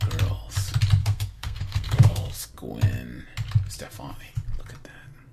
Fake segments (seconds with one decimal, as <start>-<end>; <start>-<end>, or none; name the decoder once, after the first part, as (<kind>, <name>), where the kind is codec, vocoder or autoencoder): 1.0-2.5 (codec, SNAC)